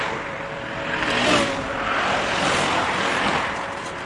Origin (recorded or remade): remade